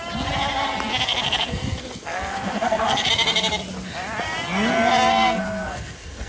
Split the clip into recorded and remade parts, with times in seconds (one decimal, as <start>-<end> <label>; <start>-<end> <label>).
0.0-0.9 recorded; 0.9-3.1 remade; 3.1-5.1 recorded; 5.1-6.3 remade